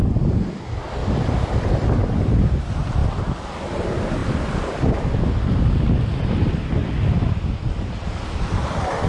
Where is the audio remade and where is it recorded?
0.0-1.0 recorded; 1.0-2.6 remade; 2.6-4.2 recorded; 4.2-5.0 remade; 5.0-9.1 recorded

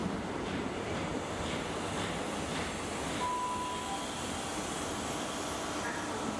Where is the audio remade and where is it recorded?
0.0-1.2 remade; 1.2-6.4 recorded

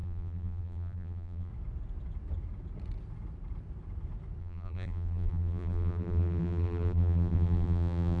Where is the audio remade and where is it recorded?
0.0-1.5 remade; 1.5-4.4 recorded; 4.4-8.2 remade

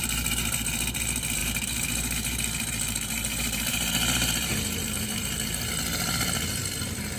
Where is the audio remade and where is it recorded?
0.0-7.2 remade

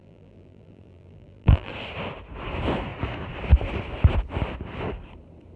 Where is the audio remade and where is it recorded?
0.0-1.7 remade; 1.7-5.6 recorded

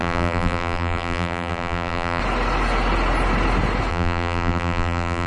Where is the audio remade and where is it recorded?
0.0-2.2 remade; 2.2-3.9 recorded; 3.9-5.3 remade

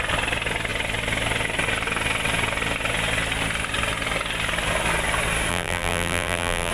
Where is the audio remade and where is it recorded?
0.0-5.5 recorded; 5.5-6.7 remade

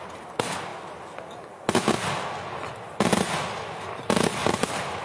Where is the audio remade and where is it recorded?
0.0-0.7 remade; 0.7-3.6 recorded; 3.6-5.0 remade